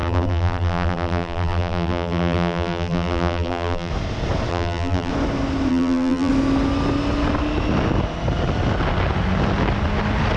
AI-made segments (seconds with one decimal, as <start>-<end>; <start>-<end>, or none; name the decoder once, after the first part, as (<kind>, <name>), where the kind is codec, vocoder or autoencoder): 0.0-3.9 (vocoder, BigVGAN v2); 4.5-5.1; 5.7-6.3